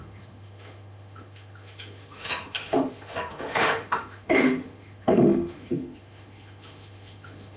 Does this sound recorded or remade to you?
remade